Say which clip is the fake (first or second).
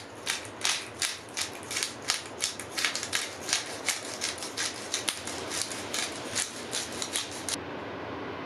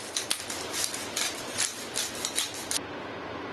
second